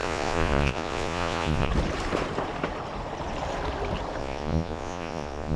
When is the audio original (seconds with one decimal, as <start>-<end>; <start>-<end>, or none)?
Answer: 1.7-4.2